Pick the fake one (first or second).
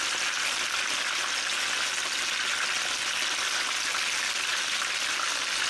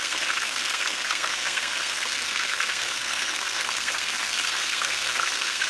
second